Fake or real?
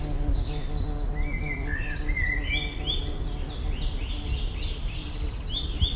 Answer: real